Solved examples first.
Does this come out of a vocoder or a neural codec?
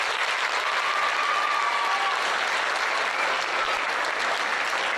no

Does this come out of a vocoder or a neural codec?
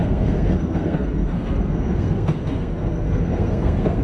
yes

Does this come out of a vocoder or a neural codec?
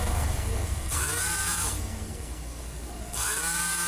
yes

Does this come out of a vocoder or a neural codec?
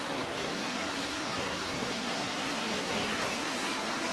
yes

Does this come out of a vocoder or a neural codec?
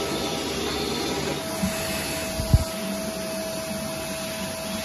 no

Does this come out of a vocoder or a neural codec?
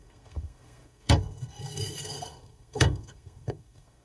yes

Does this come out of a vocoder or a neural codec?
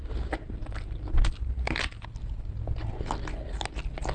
no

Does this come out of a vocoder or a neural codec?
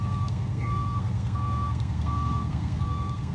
yes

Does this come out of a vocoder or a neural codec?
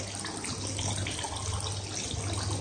no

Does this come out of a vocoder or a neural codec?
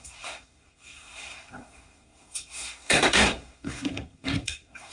yes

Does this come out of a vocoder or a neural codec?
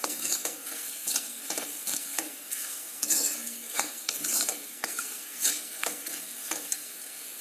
yes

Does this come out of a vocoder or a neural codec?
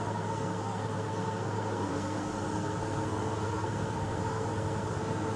yes